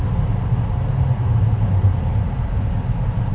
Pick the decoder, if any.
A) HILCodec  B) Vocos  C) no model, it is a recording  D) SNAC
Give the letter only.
C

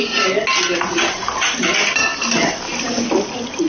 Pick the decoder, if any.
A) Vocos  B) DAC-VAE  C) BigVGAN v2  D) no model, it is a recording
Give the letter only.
D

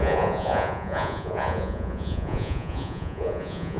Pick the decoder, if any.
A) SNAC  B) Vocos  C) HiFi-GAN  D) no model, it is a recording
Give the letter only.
B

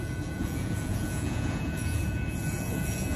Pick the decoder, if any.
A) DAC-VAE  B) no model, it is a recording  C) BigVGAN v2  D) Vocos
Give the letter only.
D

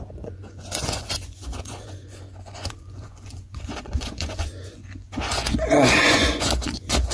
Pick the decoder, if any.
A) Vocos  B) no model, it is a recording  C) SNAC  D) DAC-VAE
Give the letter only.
A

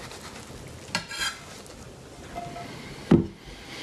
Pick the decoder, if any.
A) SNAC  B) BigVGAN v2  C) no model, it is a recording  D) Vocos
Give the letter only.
C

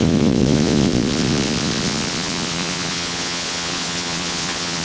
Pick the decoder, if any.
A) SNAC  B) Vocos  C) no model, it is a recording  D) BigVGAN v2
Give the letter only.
B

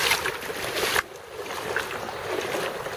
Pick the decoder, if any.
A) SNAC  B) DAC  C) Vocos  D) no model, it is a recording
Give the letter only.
D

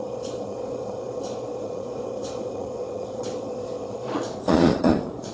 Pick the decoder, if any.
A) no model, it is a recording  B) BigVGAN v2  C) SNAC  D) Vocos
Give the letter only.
D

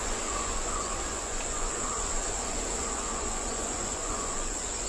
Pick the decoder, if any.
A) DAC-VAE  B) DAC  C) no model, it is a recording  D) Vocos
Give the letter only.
D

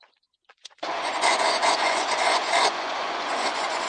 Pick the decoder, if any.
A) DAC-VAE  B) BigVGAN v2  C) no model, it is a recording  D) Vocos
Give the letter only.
D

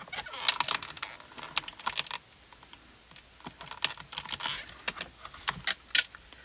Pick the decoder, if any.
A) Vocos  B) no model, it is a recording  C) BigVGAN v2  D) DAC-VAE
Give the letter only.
B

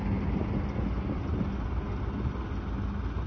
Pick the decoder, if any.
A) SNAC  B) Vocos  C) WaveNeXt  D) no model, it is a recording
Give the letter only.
D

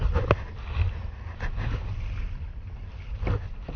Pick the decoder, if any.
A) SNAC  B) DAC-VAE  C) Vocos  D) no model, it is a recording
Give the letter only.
D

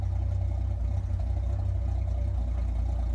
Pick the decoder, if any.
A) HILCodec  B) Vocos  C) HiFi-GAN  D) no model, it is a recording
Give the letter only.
D